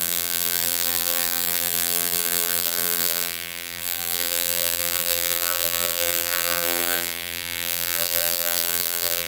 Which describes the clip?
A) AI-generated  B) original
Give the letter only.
A